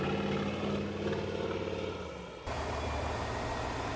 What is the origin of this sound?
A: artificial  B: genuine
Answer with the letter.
B